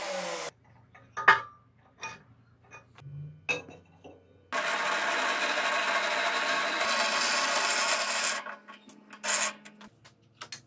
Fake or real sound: real